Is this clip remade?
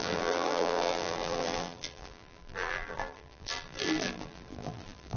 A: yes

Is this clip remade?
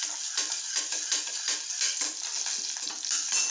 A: no